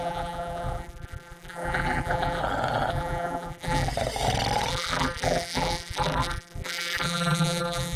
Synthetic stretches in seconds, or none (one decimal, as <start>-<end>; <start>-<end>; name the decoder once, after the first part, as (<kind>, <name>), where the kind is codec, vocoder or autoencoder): 0.0-2.4 (vocoder, BigVGAN v2); 2.9-3.9; 4.7-8.0